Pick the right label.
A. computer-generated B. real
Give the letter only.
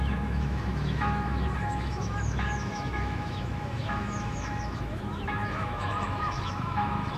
A